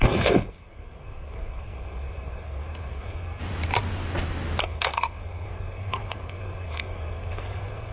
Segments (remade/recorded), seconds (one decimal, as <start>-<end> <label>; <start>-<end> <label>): 0.0-3.4 remade; 3.4-4.6 recorded; 4.6-7.9 remade

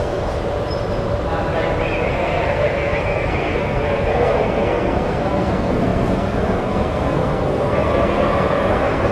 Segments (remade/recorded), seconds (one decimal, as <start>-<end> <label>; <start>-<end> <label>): 0.0-0.4 remade; 0.4-2.1 recorded; 2.1-9.1 remade

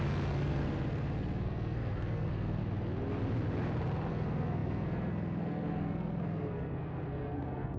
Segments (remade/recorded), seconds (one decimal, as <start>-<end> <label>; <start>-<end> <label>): 0.0-2.6 remade; 2.6-4.1 recorded; 4.1-7.8 remade

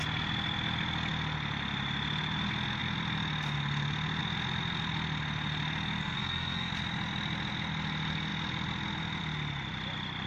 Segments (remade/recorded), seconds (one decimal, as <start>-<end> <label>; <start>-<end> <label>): 0.0-6.0 recorded; 6.0-6.7 remade; 6.7-10.3 recorded

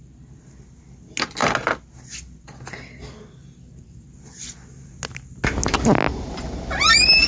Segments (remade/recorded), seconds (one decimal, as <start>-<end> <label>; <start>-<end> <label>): 0.0-7.3 recorded

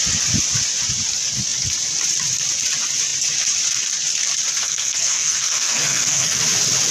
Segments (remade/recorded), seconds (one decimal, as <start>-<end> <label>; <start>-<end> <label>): 0.0-4.6 recorded; 4.6-6.4 remade; 6.4-6.9 recorded